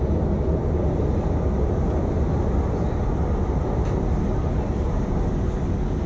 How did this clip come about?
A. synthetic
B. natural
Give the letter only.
B